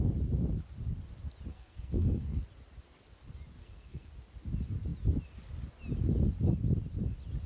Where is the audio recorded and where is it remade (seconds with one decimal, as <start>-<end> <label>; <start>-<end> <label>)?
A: 0.0-1.5 recorded; 1.5-2.4 remade; 2.4-3.6 recorded; 3.6-4.1 remade; 4.1-7.5 recorded

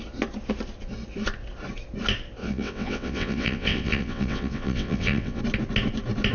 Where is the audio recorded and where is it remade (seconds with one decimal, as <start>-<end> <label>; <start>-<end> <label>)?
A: 0.0-2.4 recorded; 2.4-5.4 remade; 5.4-6.3 recorded